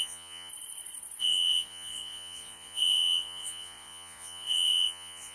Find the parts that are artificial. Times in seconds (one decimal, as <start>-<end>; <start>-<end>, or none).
0.0-0.5; 1.2-5.3